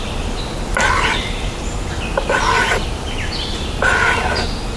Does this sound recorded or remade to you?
recorded